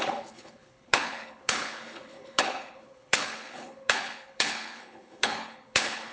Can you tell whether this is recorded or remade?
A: remade